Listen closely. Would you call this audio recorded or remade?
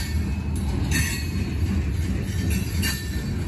recorded